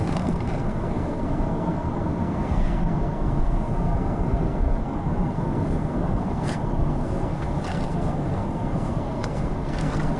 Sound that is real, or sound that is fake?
fake